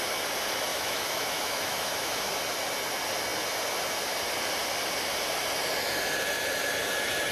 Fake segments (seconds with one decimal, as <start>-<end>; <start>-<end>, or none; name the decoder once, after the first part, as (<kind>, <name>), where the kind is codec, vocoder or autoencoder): 0.7-2.3 (autoencoder, DAC-VAE)